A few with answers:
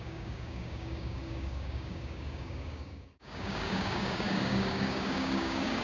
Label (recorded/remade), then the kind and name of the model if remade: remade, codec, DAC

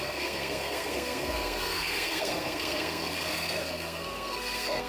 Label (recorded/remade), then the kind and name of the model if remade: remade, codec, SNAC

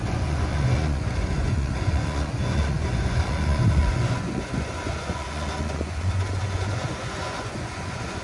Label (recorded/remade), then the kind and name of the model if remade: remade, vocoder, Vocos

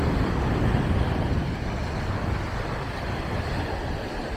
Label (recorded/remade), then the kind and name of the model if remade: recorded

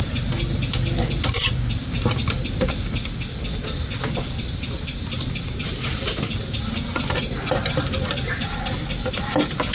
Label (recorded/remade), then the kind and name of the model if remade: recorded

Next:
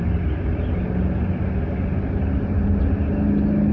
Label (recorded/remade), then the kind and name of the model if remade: recorded